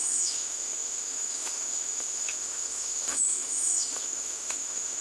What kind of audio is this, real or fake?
fake